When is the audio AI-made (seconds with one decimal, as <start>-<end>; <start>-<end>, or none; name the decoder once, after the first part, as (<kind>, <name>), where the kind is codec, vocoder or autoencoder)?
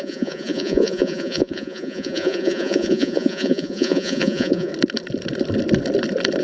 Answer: 0.0-4.7 (vocoder, Vocos)